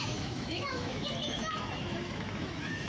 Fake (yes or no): yes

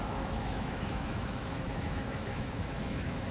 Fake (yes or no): yes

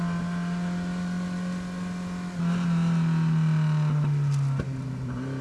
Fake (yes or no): no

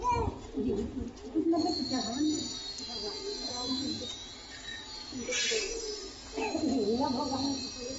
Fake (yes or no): no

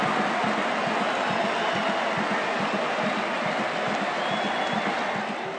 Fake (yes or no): no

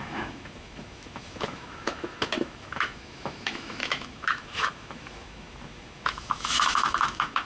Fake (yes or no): yes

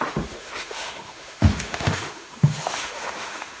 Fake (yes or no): yes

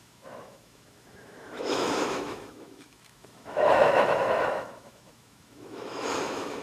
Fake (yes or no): yes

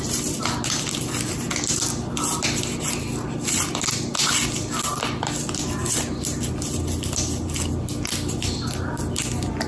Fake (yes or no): no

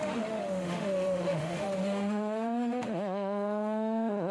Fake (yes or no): yes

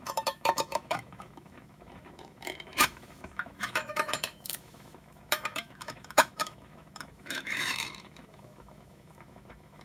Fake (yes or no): yes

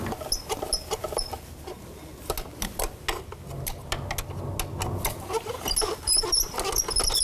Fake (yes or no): no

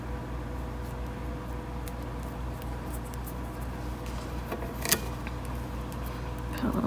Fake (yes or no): no